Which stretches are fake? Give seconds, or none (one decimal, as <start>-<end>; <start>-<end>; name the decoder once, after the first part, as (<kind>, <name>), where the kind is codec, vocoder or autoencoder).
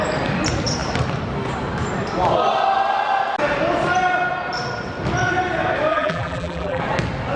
5.9-6.8 (vocoder, BigVGAN v2)